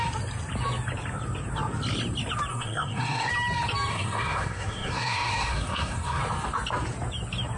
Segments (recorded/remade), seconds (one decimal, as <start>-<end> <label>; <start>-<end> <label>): 0.0-2.5 recorded; 2.5-3.3 remade; 3.3-3.9 recorded; 3.9-6.2 remade; 6.2-7.6 recorded